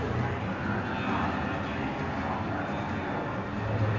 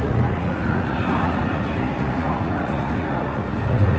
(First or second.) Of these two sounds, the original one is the first